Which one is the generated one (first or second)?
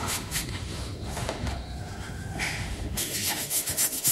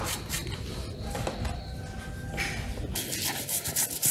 first